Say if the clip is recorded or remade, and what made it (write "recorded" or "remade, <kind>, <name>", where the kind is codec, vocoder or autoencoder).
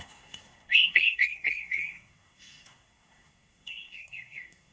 remade, codec, SNAC